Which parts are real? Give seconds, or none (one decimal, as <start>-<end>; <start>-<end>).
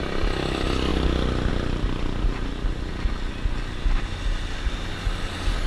0.0-5.7